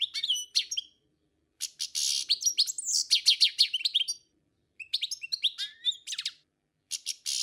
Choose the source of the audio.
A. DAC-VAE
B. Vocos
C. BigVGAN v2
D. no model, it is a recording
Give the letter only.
D